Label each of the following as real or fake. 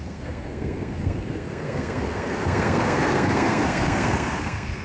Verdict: fake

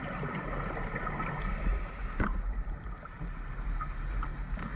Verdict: fake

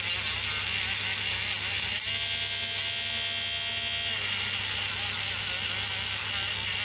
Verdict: real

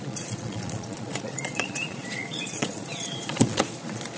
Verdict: fake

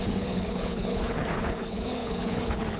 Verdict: fake